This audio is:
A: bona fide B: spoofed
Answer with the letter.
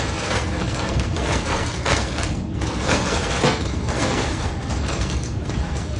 B